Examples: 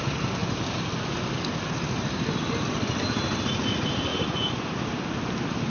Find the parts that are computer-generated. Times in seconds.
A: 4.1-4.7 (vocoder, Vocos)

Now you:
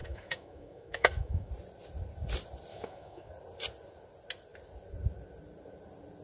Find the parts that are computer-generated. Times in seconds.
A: 0.0-1.5 (autoencoder, DAC-VAE); 2.7-3.3

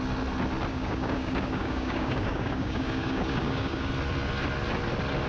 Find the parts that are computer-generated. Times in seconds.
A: 0.7-3.9 (codec, DAC)

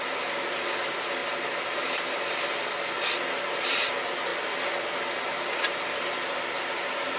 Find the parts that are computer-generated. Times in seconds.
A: none

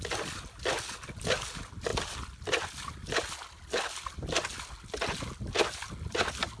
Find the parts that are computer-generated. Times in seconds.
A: none

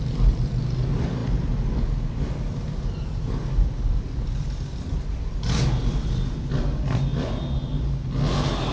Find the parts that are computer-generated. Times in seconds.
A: none

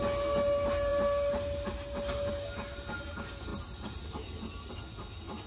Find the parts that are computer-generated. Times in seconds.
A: none

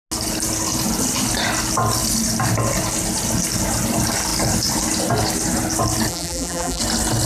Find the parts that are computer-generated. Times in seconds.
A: 6.1-6.8 (vocoder, BigVGAN v2)